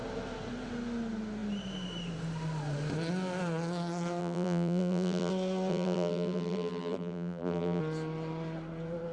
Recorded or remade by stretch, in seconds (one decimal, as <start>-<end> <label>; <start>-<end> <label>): 0.0-4.2 recorded; 4.2-5.3 remade; 5.3-5.7 recorded; 5.7-7.8 remade; 7.8-9.1 recorded